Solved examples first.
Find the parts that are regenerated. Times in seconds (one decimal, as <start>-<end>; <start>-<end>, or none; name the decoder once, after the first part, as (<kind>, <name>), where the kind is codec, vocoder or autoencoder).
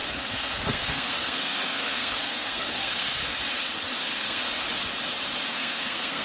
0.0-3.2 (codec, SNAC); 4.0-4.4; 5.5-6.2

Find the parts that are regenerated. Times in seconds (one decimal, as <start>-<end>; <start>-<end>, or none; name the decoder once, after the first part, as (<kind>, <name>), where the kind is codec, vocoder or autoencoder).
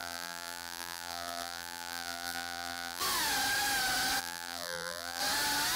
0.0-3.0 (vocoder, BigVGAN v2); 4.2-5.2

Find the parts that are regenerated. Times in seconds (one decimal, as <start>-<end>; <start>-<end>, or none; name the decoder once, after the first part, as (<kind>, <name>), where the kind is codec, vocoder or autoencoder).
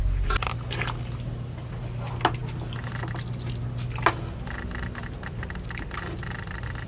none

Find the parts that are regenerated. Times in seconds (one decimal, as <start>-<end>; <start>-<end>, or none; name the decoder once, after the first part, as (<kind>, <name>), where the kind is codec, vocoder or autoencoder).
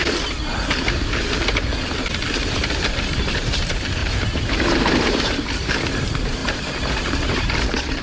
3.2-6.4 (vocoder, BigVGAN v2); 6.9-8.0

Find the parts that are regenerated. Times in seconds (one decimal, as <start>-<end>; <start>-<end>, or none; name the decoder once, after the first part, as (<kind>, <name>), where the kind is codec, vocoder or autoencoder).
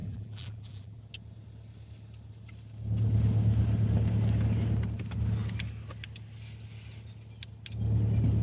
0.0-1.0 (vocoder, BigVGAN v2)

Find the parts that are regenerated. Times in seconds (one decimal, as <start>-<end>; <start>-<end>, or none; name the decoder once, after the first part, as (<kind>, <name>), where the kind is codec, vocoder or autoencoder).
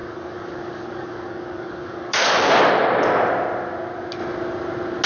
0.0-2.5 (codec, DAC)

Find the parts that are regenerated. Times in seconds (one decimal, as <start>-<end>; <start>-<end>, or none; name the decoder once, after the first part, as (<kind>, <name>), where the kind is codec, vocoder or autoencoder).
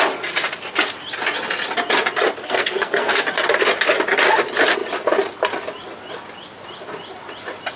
2.4-3.2 (codec, SNAC)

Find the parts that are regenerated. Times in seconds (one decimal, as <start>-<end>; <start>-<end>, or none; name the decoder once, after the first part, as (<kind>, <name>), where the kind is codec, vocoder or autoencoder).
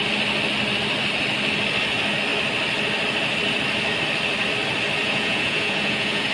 5.0-6.3 (vocoder, Vocos)